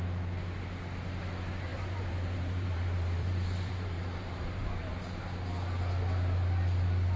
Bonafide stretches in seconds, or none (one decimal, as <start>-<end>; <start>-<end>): 0.0-1.7; 5.2-7.2